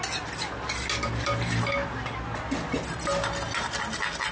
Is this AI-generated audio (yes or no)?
no